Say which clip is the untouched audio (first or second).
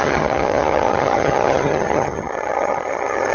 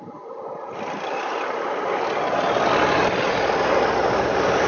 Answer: second